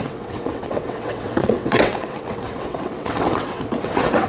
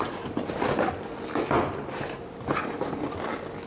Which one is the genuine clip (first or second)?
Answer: second